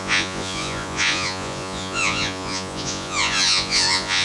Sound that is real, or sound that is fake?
fake